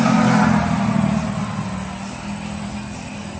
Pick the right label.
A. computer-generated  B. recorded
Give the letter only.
B